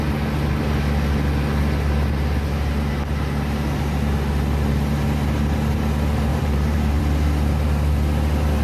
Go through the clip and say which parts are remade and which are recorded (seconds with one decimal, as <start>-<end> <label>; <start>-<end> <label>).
0.0-6.3 recorded; 6.3-7.0 remade; 7.0-8.6 recorded